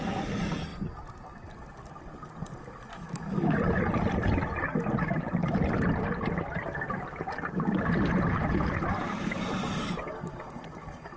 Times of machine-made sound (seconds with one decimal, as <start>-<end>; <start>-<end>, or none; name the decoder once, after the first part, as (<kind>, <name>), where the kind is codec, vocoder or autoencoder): 2.9-3.6 (autoencoder, DAC-VAE)